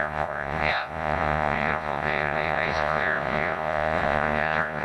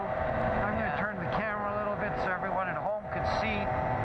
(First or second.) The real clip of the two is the second